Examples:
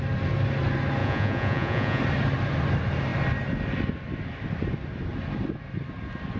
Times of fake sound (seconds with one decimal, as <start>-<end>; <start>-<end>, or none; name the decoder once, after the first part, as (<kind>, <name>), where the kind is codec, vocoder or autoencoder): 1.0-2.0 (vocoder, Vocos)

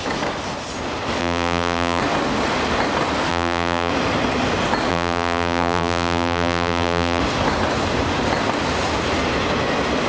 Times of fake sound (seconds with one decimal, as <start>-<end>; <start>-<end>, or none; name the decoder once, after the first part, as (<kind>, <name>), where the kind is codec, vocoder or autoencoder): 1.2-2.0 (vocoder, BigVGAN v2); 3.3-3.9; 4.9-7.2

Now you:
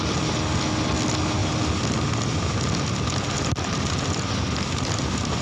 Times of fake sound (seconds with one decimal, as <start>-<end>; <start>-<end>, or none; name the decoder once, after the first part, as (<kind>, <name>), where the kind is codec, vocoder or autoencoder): none

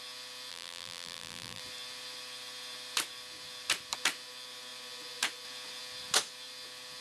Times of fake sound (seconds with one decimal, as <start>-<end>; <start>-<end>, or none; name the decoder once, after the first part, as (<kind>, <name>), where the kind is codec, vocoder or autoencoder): 0.5-1.6 (vocoder, BigVGAN v2)

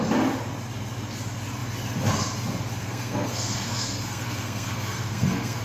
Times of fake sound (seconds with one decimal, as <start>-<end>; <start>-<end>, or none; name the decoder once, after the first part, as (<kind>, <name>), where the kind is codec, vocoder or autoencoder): 2.8-5.6 (codec, SNAC)

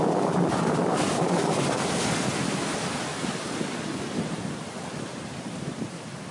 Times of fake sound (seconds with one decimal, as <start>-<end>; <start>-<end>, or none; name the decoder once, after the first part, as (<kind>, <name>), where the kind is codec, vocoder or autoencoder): 3.1-6.3 (vocoder, BigVGAN v2)

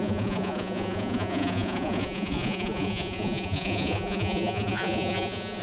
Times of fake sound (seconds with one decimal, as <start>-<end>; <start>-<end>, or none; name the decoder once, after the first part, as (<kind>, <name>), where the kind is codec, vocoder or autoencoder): 0.0-5.6 (vocoder, Vocos)

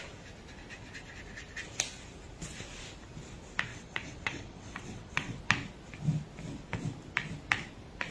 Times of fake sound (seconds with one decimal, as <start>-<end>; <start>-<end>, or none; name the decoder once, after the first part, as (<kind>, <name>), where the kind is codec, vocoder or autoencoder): 3.7-5.4 (vocoder, WaveNeXt)